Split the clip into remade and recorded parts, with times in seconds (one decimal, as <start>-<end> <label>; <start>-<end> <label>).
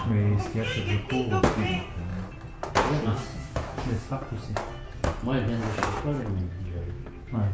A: 0.0-3.3 recorded; 3.3-4.2 remade; 4.2-6.6 recorded; 6.6-7.5 remade